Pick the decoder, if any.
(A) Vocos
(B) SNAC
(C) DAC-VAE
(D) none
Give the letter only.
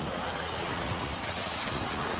A